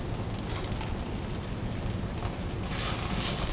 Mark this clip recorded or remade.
recorded